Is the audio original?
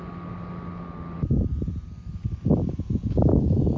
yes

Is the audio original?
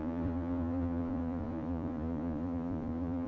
no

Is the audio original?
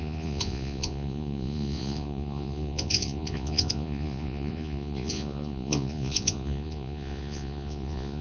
no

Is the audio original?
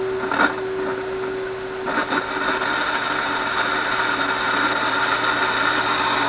yes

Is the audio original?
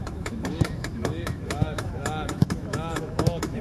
no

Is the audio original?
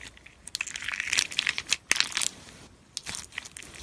yes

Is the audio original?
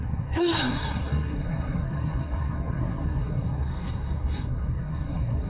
no